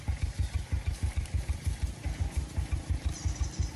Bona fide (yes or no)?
no